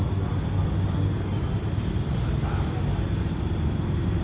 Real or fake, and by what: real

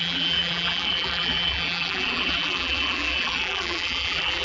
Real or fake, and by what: fake, vocoder, BigVGAN v2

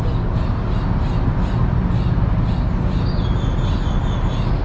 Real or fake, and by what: real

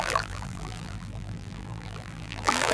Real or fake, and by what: fake, vocoder, BigVGAN v2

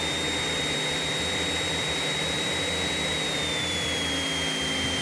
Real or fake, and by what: real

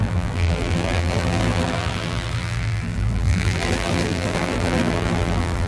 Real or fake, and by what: fake, vocoder, BigVGAN v2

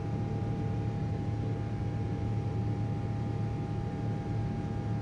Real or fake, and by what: real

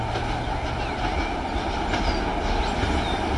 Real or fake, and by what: real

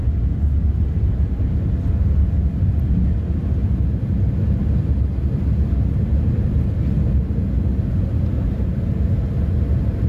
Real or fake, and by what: real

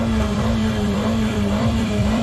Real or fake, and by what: fake, vocoder, BigVGAN v2